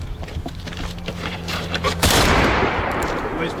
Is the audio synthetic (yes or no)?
yes